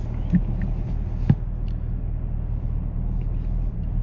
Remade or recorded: recorded